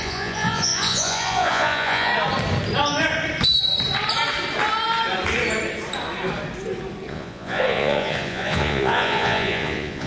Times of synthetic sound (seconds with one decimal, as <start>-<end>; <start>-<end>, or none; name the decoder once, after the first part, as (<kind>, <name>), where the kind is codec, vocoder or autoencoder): 0.0-2.1 (vocoder, Vocos); 7.1-10.1

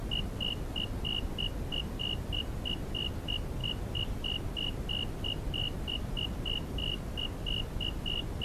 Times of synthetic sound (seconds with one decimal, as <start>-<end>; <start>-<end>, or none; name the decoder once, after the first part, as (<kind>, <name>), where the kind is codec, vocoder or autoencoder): none